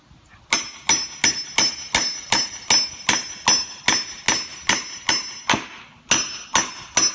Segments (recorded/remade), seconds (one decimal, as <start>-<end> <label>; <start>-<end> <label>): 0.0-7.1 recorded